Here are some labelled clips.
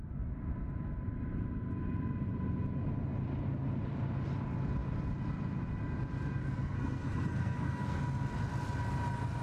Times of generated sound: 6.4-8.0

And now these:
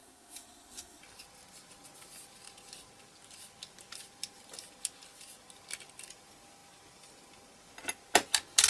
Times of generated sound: 0.0-1.0

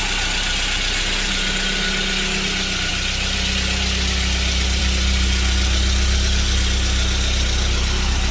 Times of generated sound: none